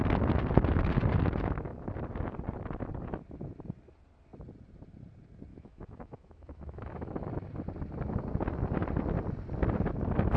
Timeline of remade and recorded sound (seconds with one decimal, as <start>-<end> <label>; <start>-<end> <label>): 0.0-5.5 recorded; 5.5-7.1 remade; 7.1-10.4 recorded